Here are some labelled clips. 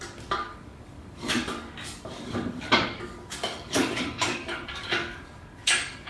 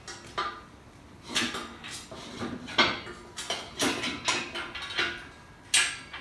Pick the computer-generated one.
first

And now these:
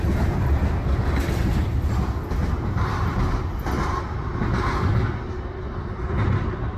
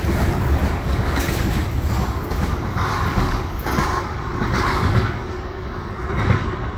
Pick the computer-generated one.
second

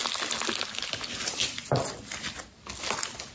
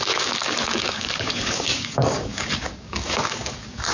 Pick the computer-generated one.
second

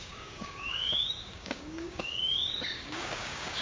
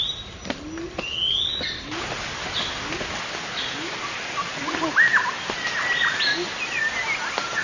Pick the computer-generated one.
first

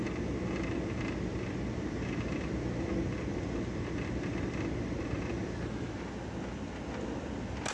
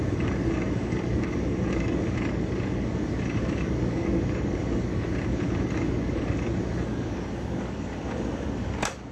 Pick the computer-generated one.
second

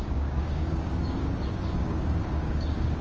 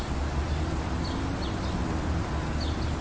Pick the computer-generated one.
first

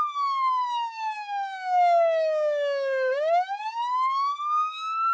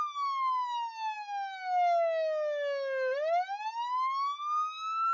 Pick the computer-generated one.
first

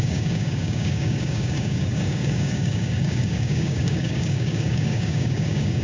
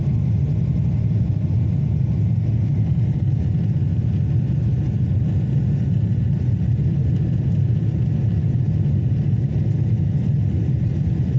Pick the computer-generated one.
first